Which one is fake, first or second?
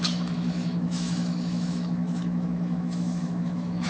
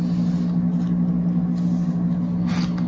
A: first